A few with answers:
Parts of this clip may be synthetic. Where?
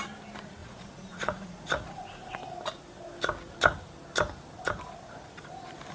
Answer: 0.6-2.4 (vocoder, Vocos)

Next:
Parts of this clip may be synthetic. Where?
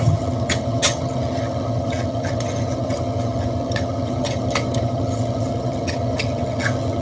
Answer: 0.0-7.0 (vocoder, HiFi-GAN)